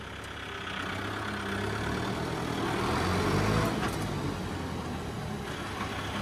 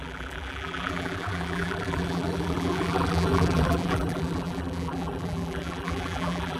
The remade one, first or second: second